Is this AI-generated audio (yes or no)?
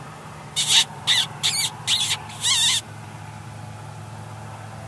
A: no